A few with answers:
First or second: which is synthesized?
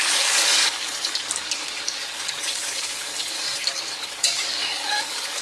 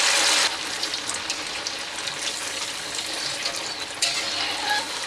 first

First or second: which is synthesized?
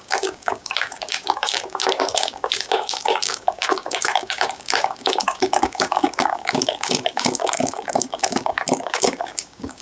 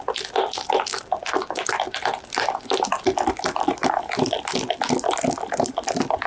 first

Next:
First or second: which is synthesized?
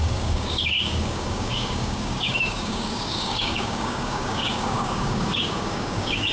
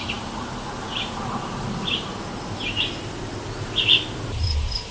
first